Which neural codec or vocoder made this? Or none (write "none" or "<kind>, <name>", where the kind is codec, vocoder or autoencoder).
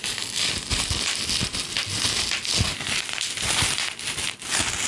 none